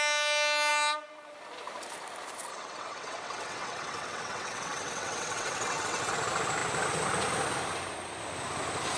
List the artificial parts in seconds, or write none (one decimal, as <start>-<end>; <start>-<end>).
2.5-6.1